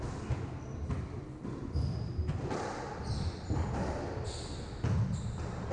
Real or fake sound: real